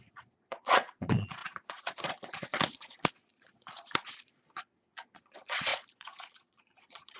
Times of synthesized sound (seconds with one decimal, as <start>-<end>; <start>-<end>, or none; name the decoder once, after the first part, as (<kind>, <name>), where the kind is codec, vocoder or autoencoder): 0.0-7.2 (vocoder, Vocos)